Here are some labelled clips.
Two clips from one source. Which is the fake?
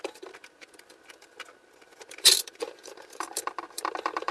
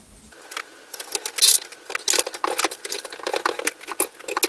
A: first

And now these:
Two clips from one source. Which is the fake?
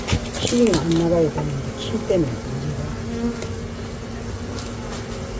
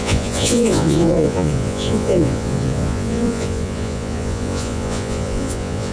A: second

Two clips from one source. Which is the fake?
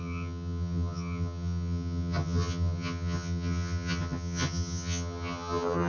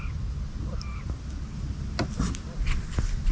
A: first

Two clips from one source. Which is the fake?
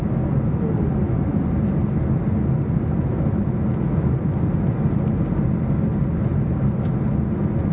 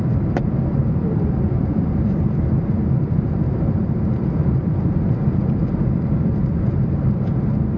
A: second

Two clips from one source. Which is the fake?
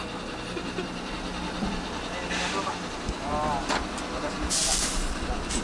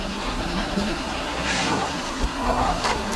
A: second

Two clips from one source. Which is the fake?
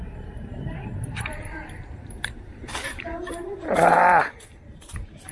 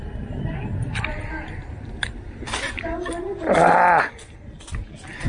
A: first